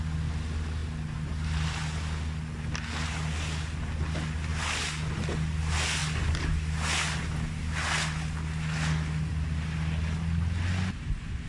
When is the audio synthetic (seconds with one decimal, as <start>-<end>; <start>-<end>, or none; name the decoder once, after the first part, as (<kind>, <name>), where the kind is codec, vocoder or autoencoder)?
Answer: none